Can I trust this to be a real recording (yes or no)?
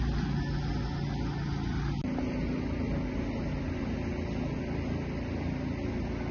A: yes